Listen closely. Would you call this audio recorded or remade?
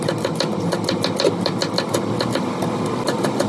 recorded